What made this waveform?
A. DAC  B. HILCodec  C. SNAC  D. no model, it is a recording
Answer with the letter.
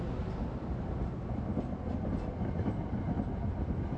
D